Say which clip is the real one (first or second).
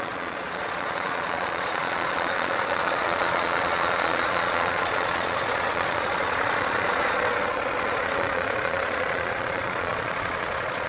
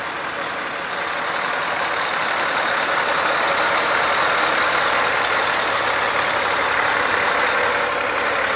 second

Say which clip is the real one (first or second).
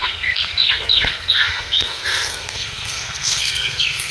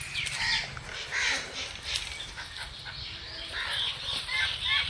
second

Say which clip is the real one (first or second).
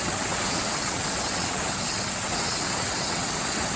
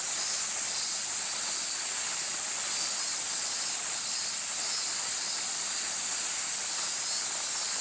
second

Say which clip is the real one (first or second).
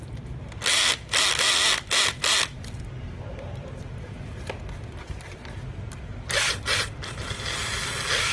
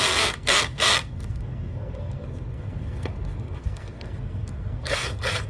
first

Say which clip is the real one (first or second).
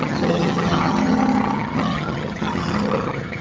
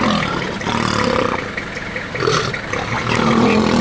second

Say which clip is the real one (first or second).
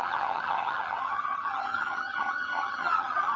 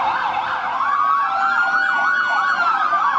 second